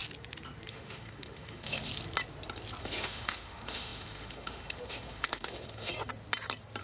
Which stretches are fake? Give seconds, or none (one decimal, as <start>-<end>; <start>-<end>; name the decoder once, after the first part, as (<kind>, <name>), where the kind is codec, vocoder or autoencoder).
0.7-1.9 (autoencoder, DAC-VAE); 2.8-5.9